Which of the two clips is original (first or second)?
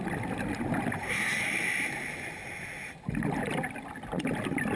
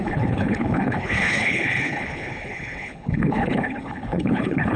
first